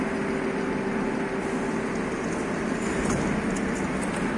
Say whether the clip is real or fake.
real